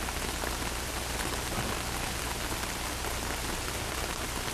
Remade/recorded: recorded